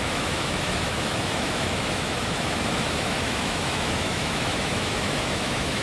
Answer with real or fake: fake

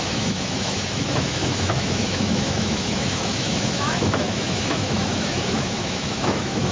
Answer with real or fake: fake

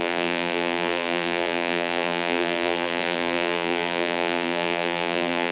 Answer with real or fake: fake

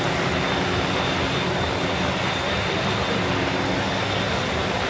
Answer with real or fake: real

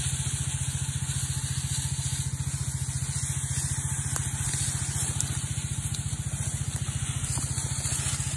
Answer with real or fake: real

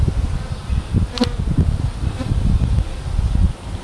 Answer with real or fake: real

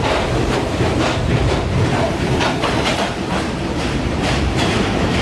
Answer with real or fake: fake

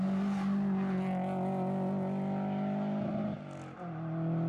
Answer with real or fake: real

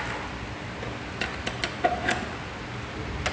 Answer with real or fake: real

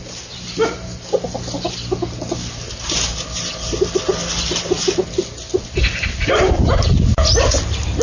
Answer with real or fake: real